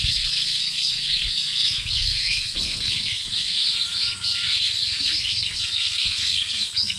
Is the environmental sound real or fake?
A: fake